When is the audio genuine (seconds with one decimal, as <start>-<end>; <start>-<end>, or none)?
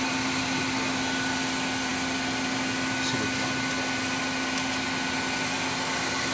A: 0.0-6.3